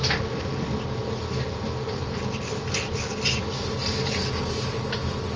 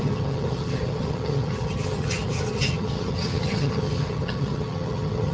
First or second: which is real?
first